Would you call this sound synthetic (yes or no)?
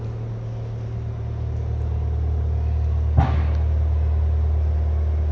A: no